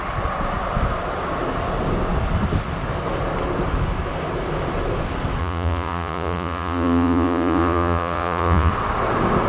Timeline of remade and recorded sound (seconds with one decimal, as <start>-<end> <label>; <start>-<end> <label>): 0.0-5.4 recorded; 5.4-8.7 remade; 8.7-9.5 recorded

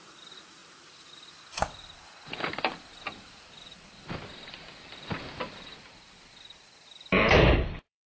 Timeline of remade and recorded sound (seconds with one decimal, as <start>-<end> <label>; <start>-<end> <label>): 0.0-8.2 remade

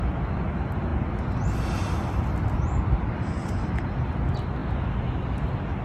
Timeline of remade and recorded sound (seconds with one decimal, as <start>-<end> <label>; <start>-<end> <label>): 0.0-5.8 recorded

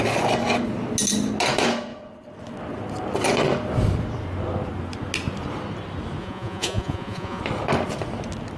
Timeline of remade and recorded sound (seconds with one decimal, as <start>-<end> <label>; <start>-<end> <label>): 0.0-6.2 recorded; 6.2-7.4 remade; 7.4-8.6 recorded

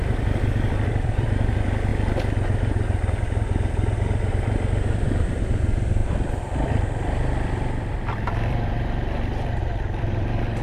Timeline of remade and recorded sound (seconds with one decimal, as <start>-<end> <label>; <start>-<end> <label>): 0.0-1.9 remade; 1.9-4.3 recorded; 4.3-10.6 remade

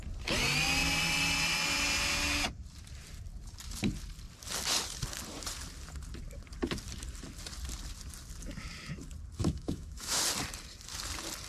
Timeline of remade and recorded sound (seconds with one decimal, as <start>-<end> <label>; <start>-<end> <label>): 0.0-9.4 recorded; 9.4-10.2 remade; 10.2-11.5 recorded

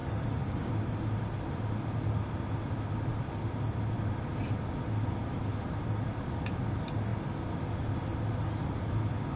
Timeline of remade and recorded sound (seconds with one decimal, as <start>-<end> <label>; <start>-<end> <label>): 0.0-0.7 remade; 0.7-9.4 recorded